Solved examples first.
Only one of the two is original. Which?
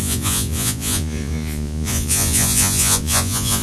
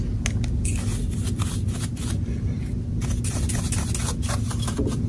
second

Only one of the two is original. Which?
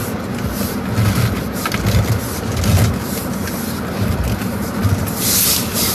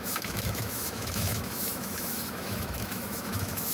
first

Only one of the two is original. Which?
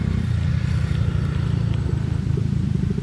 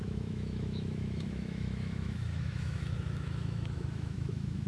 first